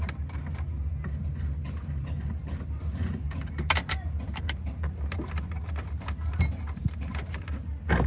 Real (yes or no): yes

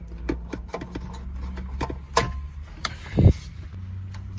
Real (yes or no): yes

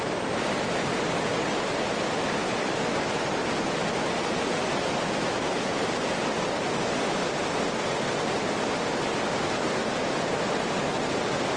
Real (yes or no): yes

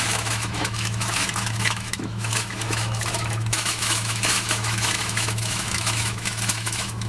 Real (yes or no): no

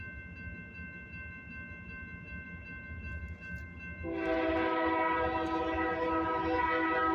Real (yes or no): yes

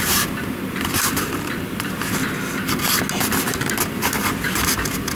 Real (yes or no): yes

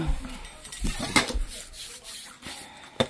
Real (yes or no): yes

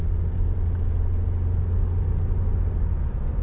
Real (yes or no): yes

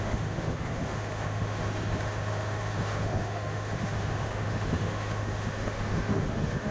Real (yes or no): no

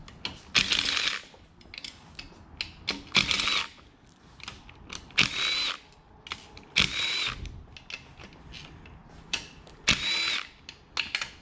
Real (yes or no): yes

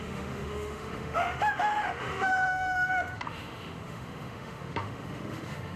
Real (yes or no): no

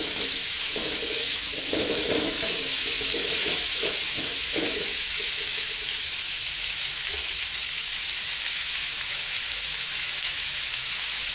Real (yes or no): no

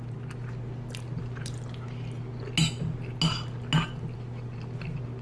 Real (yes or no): yes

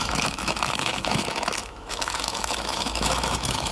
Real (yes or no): no